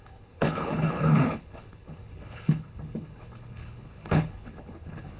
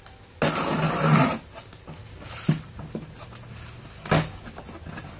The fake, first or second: first